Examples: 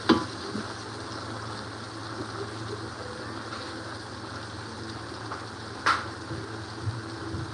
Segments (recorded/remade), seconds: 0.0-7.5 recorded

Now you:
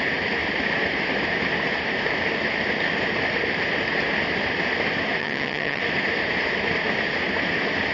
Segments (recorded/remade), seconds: 0.0-5.2 recorded; 5.2-5.8 remade; 5.8-7.9 recorded

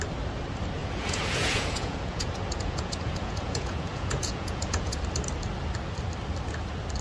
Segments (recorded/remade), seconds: 0.0-0.8 recorded; 0.8-5.0 remade; 5.0-7.0 recorded

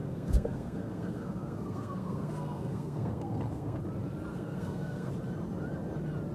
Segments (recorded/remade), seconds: 0.0-3.8 remade; 3.8-4.3 recorded; 4.3-5.1 remade; 5.1-6.3 recorded

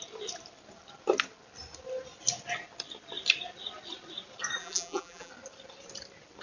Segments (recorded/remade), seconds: 0.0-4.6 recorded; 4.6-5.3 remade; 5.3-6.4 recorded

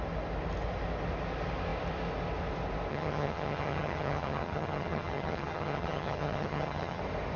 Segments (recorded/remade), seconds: 0.0-2.9 recorded; 2.9-7.0 remade; 7.0-7.4 recorded